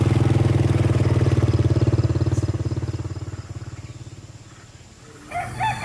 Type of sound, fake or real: real